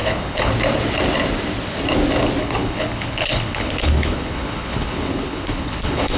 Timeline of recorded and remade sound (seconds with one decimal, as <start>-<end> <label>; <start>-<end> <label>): 0.0-0.5 remade; 0.5-2.4 recorded; 2.4-6.2 remade